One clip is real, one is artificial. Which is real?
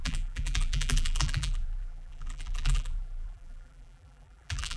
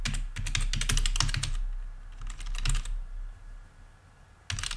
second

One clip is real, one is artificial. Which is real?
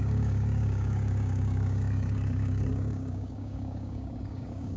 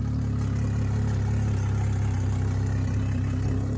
second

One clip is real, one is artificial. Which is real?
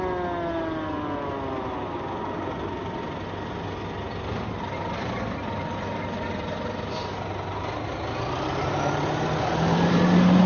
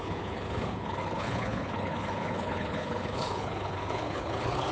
first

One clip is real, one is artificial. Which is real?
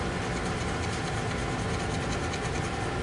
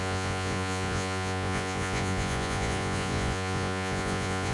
first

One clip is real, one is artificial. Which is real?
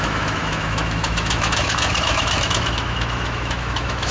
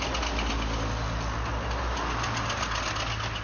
second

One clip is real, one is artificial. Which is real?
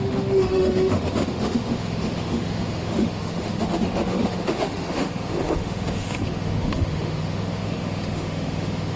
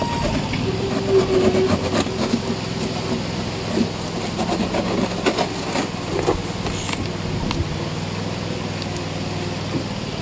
second